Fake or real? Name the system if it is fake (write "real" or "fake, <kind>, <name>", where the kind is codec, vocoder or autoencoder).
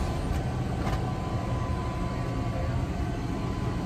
real